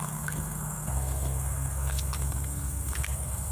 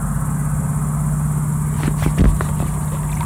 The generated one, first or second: first